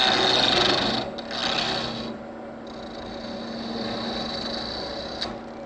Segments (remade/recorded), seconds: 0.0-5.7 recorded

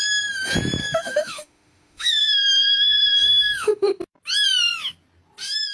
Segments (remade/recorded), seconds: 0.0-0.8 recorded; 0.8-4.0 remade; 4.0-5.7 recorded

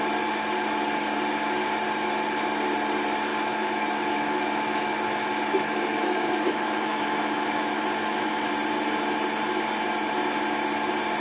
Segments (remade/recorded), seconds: 0.0-3.3 recorded; 3.3-8.5 remade; 8.5-11.2 recorded

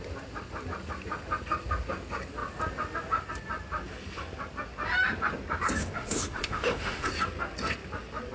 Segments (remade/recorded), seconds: 0.0-5.8 recorded; 5.8-7.1 remade; 7.1-8.3 recorded